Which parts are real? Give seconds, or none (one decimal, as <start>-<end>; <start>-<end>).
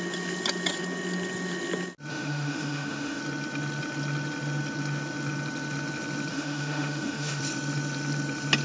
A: 0.0-2.1; 3.2-6.3; 7.4-8.6